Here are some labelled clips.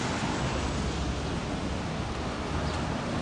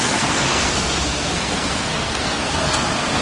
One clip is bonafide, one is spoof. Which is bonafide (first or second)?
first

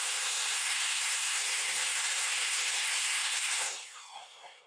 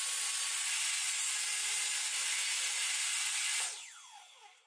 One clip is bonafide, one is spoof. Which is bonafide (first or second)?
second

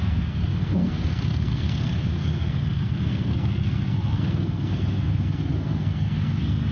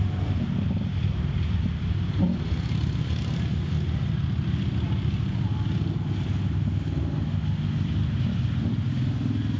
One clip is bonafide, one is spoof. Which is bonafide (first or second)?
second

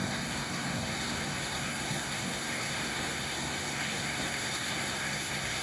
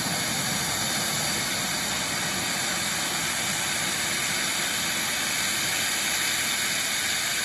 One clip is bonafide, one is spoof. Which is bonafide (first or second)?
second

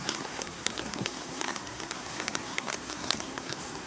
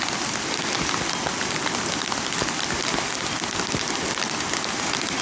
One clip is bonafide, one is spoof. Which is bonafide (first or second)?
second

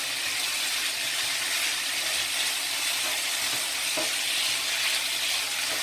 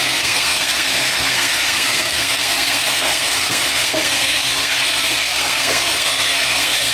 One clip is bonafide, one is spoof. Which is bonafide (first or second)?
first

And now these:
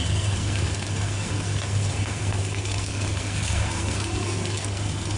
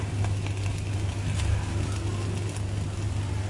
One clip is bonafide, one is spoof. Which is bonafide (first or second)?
second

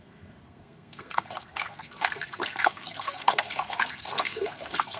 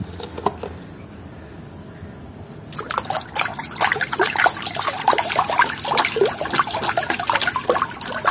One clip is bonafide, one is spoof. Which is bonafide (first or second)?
second